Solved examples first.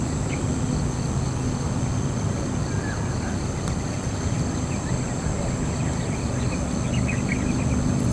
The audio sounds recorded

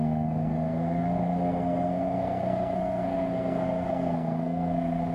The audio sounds remade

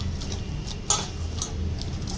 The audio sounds recorded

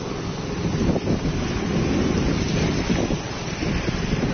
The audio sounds recorded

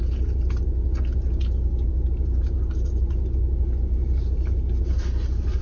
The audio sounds recorded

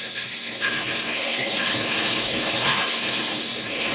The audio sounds remade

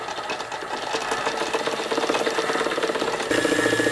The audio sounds recorded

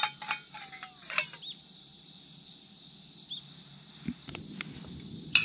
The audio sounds recorded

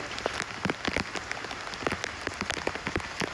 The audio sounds recorded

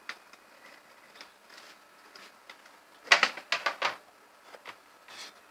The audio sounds recorded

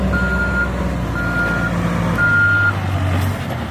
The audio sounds recorded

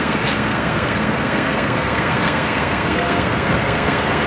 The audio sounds remade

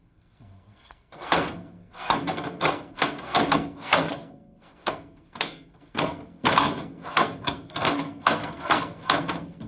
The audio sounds remade